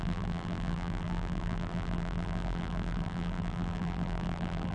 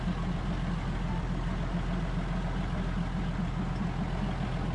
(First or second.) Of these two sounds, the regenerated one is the first